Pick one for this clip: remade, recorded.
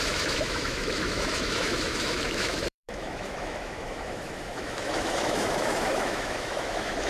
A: remade